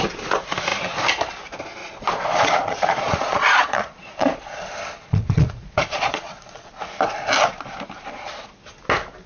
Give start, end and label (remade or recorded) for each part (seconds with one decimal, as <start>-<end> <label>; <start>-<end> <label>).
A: 0.0-1.8 recorded; 1.8-4.6 remade; 4.6-5.0 recorded; 5.0-6.7 remade; 6.7-9.3 recorded